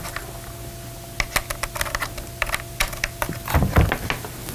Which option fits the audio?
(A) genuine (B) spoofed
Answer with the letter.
A